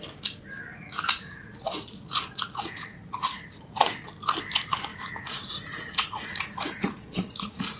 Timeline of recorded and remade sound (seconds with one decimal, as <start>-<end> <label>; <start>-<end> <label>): 0.0-0.7 recorded; 0.7-4.0 remade; 4.0-4.9 recorded; 4.9-7.8 remade